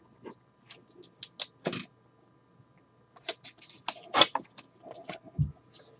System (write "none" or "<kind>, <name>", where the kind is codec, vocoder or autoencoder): none